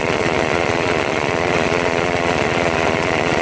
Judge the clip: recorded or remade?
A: remade